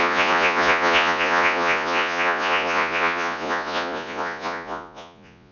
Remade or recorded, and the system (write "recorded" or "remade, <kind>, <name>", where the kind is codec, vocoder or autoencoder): remade, vocoder, Vocos